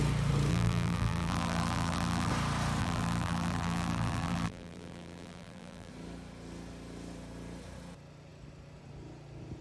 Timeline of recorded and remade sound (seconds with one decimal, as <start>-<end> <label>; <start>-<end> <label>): 0.0-0.5 recorded; 0.5-2.3 remade; 2.3-2.8 recorded; 2.8-5.9 remade; 5.9-9.6 recorded